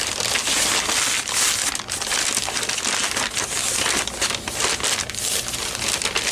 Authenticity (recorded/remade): recorded